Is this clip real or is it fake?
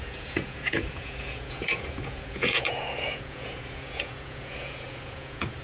fake